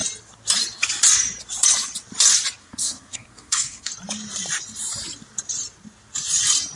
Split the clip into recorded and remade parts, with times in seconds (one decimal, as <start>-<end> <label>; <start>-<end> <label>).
0.0-2.6 recorded; 2.6-3.9 remade; 3.9-6.8 recorded